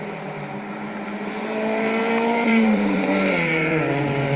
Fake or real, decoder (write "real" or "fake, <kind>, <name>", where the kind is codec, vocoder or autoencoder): fake, vocoder, BigVGAN v2